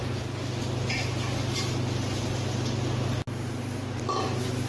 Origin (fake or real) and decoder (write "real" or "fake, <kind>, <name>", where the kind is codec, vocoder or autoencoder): real